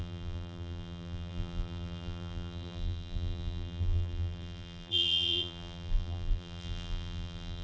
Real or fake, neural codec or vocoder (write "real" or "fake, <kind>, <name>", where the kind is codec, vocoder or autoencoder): fake, vocoder, BigVGAN v2